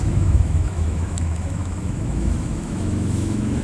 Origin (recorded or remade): remade